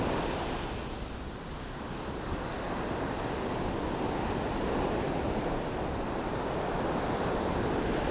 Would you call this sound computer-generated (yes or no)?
no